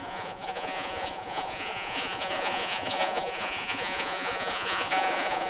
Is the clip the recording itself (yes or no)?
no